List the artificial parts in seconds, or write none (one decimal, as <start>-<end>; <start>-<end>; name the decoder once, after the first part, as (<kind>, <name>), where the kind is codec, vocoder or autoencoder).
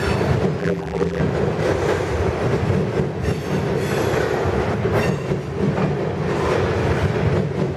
0.6-1.2 (vocoder, BigVGAN v2)